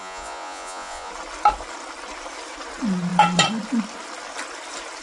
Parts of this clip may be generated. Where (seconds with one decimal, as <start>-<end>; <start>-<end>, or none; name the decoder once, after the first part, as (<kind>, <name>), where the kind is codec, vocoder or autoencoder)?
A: 0.0-1.1 (vocoder, Vocos)